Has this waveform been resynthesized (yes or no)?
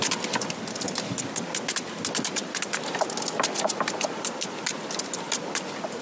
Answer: no